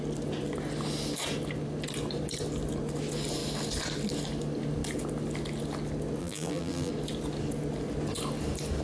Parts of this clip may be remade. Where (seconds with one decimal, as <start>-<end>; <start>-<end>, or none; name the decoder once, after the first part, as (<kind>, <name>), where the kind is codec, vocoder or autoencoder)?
6.2-6.9 (vocoder, BigVGAN v2)